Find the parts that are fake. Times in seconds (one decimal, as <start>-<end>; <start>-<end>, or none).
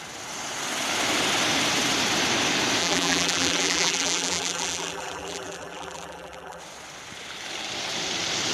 2.8-6.6